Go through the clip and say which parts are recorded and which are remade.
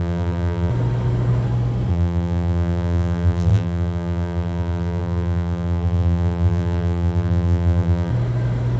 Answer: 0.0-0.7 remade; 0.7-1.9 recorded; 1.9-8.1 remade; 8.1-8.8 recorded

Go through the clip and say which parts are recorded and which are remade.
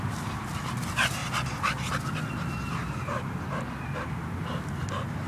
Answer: 0.0-5.3 recorded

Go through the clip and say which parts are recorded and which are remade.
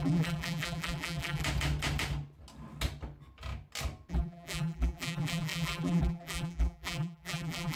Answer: 0.0-1.4 remade; 1.4-4.1 recorded; 4.1-7.8 remade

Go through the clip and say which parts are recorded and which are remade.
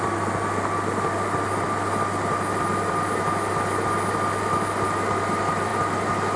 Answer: 0.0-6.4 recorded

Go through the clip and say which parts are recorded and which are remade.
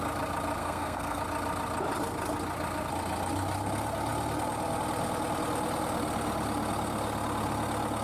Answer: 0.0-0.6 recorded; 0.6-1.2 remade; 1.2-8.0 recorded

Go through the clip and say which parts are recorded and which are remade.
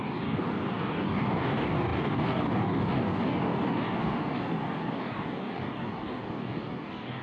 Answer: 0.0-7.2 remade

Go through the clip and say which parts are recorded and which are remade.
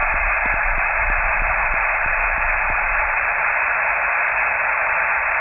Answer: 0.0-3.0 remade; 3.0-5.4 recorded